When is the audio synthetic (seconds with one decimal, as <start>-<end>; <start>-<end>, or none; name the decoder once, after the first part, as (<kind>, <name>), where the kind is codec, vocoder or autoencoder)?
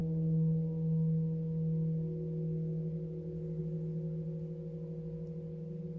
none